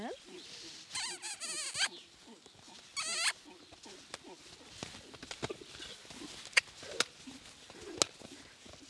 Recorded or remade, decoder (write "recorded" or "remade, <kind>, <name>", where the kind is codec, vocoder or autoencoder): recorded